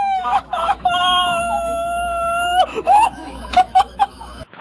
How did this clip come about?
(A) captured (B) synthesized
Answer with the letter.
B